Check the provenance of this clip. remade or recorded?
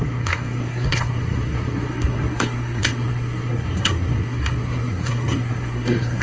remade